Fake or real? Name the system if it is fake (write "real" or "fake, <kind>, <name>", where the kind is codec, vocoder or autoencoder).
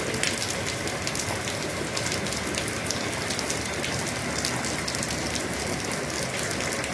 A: real